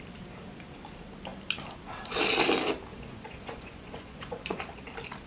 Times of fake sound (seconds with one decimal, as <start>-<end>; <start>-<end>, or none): 2.9-4.6